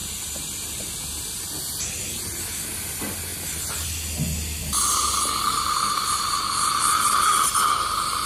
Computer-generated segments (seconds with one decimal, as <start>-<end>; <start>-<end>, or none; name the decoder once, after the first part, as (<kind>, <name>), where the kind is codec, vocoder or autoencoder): none